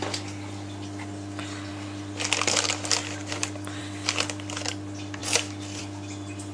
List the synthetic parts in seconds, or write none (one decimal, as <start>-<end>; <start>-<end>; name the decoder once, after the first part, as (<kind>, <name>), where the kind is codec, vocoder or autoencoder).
none